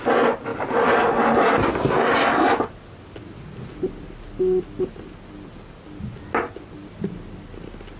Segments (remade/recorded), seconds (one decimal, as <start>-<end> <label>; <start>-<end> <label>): 0.0-6.8 recorded; 6.8-8.0 remade